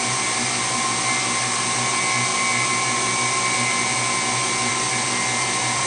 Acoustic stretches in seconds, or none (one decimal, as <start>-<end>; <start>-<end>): 0.0-5.9